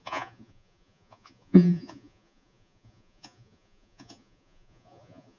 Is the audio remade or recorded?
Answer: remade